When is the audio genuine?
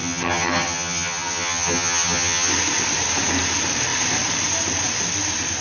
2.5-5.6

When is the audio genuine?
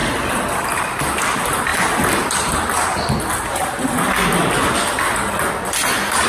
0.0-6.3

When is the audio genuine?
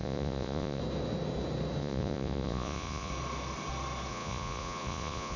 0.8-1.8; 3.1-4.1